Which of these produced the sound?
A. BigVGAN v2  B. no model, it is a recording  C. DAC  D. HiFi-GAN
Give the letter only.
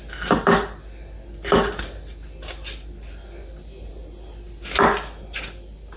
B